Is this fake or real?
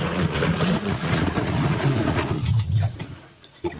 fake